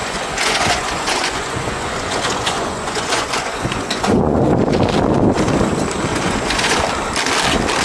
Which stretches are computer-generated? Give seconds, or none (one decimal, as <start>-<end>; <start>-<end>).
0.0-4.5; 6.1-6.8